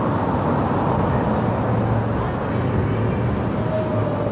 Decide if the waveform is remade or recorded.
recorded